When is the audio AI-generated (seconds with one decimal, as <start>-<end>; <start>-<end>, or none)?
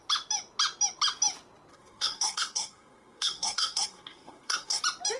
1.7-4.8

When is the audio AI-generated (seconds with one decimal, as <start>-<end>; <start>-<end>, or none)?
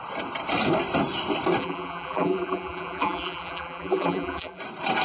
1.6-4.6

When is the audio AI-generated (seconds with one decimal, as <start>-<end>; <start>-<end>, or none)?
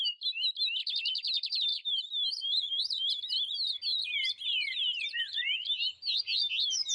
1.7-2.8; 3.9-6.2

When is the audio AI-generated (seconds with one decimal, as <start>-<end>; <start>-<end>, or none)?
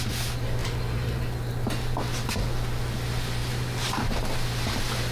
0.6-1.2; 3.4-4.2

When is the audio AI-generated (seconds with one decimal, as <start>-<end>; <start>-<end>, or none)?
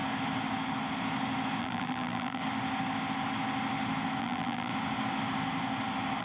1.6-2.4; 4.2-4.7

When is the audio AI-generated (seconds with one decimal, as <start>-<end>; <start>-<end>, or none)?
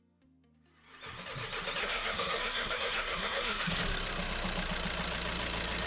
1.8-3.7